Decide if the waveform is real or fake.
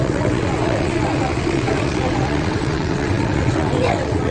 fake